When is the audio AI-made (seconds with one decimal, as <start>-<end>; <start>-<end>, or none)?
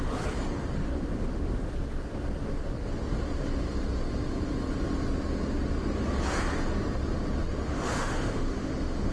0.8-1.7; 7.6-9.1